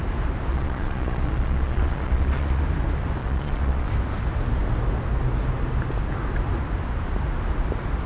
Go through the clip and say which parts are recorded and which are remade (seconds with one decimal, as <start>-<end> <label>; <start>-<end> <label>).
0.0-0.5 recorded; 0.5-2.6 remade; 2.6-3.2 recorded; 3.2-3.9 remade; 3.9-8.1 recorded